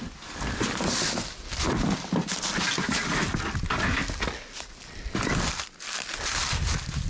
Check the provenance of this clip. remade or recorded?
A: recorded